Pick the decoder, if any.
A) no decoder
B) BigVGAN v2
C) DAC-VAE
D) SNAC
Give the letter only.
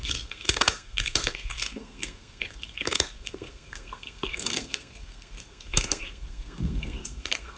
D